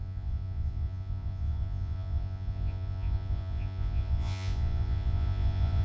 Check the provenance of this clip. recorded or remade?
remade